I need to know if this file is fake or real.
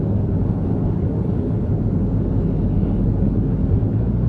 fake